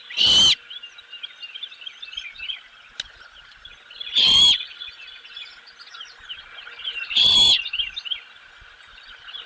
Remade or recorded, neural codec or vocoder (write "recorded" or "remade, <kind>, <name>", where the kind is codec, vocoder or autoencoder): recorded